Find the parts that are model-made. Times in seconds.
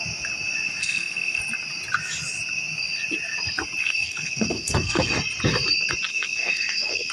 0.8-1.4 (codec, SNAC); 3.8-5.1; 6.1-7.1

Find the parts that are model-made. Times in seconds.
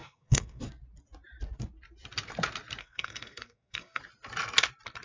0.0-0.6 (codec, SNAC); 2.8-4.0